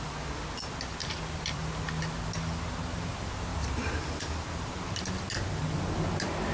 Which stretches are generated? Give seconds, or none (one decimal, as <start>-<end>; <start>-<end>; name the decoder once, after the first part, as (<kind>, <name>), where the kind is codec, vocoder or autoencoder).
1.0-1.9 (vocoder, BigVGAN v2); 3.5-5.1